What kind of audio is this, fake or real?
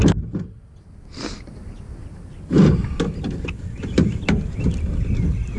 real